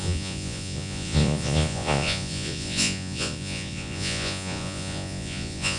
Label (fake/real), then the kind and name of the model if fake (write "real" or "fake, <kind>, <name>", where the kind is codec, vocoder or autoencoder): fake, vocoder, Vocos